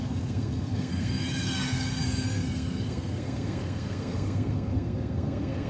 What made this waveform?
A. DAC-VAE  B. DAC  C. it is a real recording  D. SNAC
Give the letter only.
D